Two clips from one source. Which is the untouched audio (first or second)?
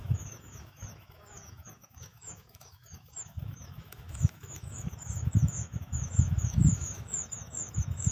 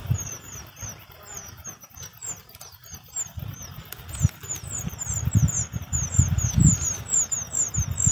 second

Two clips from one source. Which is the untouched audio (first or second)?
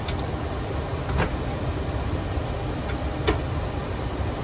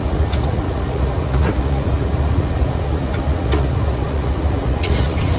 first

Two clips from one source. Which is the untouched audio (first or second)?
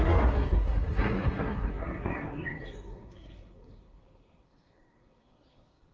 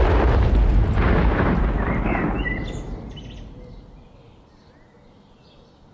second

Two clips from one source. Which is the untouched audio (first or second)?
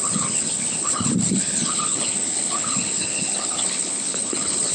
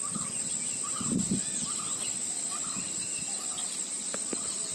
second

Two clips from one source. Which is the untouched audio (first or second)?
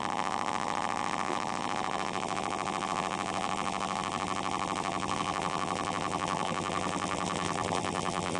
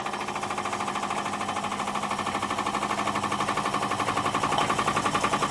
second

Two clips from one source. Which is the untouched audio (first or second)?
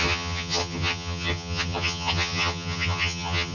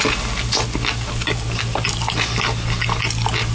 second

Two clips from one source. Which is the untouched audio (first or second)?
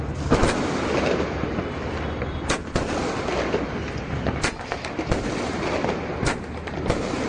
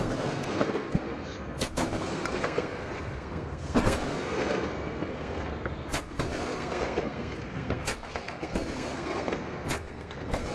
first